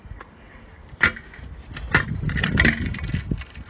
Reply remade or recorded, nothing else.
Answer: recorded